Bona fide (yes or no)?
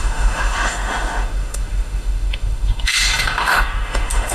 no